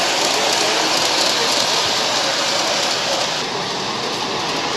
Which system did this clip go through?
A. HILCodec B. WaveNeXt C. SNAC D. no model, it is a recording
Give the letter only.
D